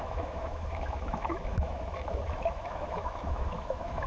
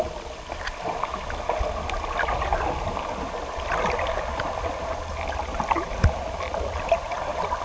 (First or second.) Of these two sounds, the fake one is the first